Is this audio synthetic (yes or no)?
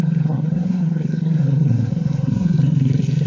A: yes